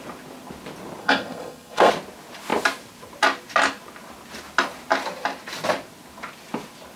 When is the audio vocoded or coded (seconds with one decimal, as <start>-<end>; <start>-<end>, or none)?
1.0-1.9